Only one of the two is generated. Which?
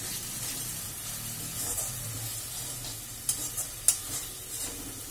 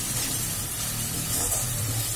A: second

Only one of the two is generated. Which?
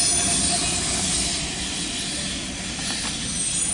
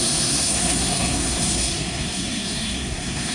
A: second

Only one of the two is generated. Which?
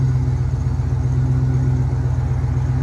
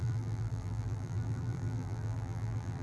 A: second